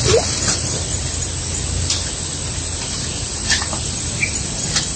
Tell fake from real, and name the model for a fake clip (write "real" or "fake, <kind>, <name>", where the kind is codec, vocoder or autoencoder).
real